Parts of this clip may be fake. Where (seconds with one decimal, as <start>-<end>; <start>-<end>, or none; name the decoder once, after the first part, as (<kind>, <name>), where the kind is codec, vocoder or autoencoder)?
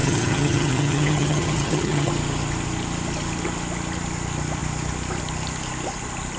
0.0-2.1 (vocoder, HiFi-GAN)